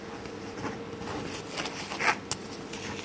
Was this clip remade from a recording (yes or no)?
no